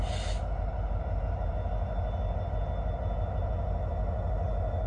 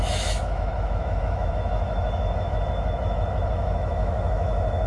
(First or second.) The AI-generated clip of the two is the second